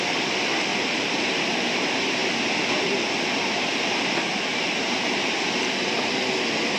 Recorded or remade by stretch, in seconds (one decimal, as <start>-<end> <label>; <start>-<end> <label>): 0.0-0.7 recorded; 0.7-1.4 remade; 1.4-6.8 recorded